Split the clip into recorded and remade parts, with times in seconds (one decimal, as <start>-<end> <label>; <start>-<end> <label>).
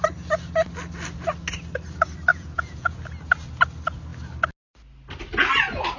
0.0-2.3 recorded; 2.3-3.0 remade; 3.0-6.0 recorded